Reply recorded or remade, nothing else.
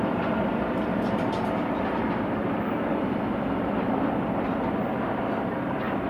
remade